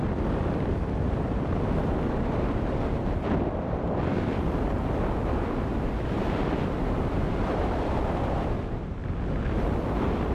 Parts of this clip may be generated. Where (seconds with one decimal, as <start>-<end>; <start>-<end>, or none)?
0.0-9.0; 9.6-10.3